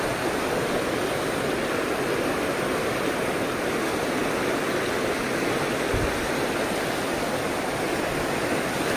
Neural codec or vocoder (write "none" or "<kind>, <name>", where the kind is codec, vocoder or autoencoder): none